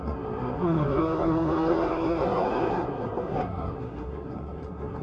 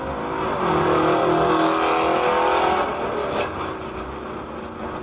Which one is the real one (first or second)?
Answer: second